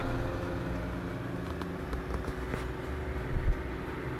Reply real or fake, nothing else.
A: real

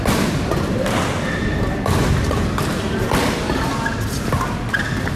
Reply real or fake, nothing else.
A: real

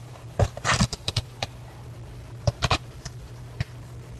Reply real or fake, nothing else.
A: fake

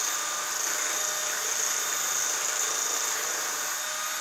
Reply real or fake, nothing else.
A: real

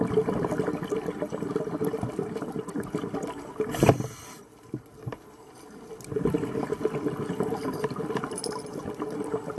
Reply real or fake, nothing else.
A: real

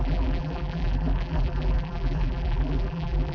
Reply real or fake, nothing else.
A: fake